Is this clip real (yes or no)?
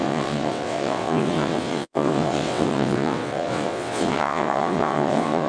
no